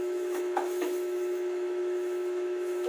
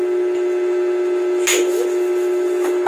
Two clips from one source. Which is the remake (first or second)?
first